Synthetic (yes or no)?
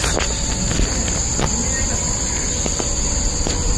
no